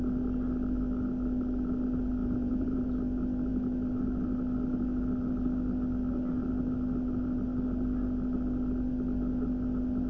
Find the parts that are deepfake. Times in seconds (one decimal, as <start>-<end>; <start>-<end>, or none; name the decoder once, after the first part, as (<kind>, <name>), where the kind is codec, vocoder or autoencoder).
2.2-2.8 (vocoder, Vocos)